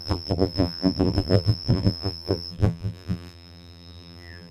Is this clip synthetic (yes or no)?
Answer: yes